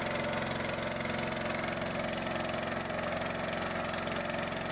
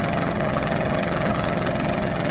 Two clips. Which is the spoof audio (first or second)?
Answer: second